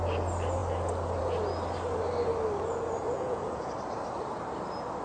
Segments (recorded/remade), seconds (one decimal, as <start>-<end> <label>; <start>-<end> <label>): 0.0-3.0 recorded; 3.0-3.7 remade; 3.7-5.0 recorded